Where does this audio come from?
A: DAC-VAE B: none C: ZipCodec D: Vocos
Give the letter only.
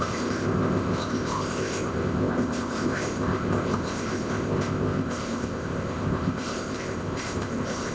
C